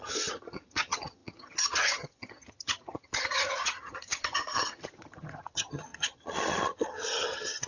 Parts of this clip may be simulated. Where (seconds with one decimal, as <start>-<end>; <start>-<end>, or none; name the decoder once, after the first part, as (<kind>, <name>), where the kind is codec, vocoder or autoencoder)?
0.0-7.7 (vocoder, HiFi-GAN)